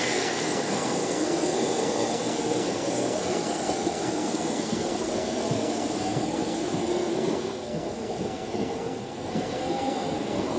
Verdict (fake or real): fake